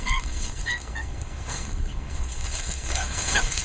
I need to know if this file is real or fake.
fake